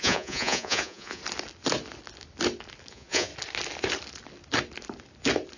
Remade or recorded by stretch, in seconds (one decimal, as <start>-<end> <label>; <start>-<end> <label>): 0.0-1.2 remade; 1.2-2.9 recorded; 2.9-3.3 remade; 3.3-5.6 recorded